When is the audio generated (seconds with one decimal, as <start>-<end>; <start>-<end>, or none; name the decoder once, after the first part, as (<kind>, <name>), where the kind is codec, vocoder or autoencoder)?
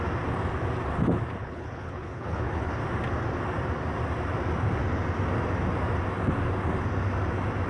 1.4-2.7 (codec, HILCodec)